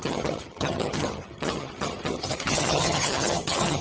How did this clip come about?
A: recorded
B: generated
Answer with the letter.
B